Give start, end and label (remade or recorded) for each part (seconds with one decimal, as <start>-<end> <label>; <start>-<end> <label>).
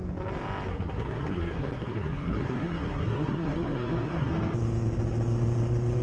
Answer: 0.0-0.7 recorded; 0.7-4.3 remade; 4.3-6.0 recorded